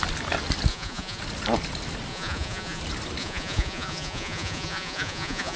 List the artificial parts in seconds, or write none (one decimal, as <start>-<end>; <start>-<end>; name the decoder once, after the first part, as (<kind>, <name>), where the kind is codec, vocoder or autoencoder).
0.7-1.2 (vocoder, Vocos); 2.1-2.8; 3.2-5.6